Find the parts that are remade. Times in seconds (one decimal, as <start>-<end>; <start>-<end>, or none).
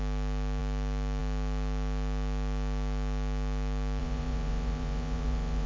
4.0-5.7